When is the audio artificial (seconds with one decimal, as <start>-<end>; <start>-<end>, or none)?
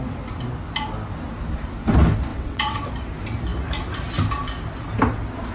2.3-2.9